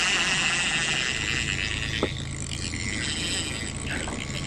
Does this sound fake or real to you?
real